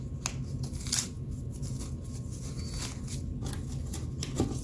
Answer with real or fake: real